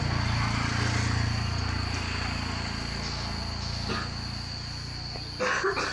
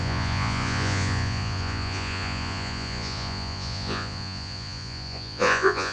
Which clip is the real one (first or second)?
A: first